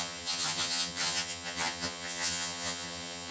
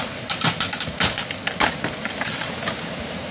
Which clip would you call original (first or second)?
second